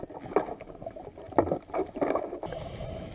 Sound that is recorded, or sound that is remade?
recorded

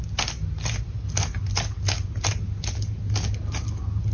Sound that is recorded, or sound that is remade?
recorded